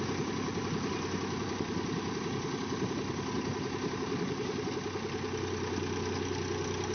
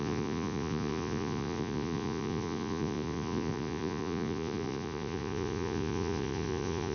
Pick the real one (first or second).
first